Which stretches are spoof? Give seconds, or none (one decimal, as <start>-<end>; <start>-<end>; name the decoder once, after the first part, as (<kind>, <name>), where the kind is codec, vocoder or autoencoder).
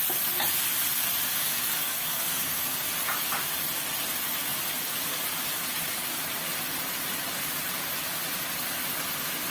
1.4-2.9 (codec, SNAC)